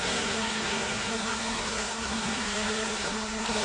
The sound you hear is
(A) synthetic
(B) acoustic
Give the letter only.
A